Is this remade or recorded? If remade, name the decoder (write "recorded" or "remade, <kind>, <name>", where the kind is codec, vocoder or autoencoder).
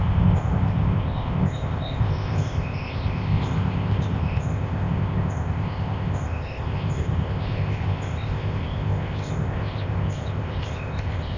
remade, codec, ZipCodec